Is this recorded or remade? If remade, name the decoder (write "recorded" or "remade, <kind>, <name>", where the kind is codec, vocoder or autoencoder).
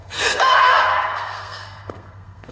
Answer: remade, codec, SNAC